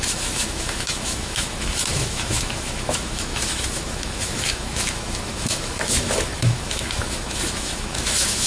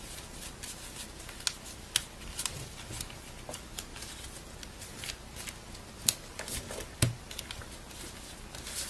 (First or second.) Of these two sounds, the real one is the second